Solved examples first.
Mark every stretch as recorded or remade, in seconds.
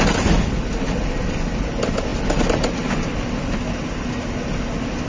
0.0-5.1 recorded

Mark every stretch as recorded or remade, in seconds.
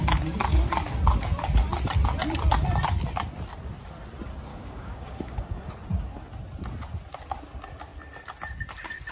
0.0-4.5 recorded; 4.5-5.6 remade; 5.6-9.1 recorded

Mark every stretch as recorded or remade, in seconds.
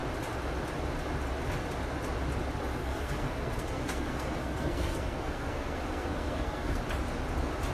0.0-2.8 recorded; 2.8-6.8 remade; 6.8-7.7 recorded